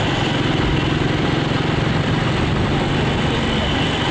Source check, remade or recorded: recorded